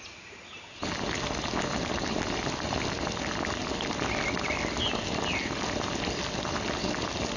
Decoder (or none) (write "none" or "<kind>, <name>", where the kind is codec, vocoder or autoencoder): none